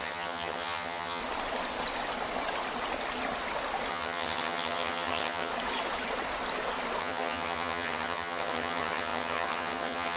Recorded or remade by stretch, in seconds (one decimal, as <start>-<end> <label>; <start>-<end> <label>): 0.0-1.2 remade; 1.2-3.9 recorded; 3.9-5.5 remade; 5.5-7.0 recorded; 7.0-10.2 remade